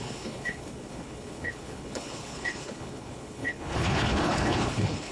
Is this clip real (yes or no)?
no